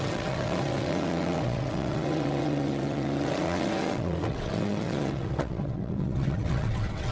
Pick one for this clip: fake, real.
fake